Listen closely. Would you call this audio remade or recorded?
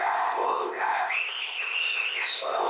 remade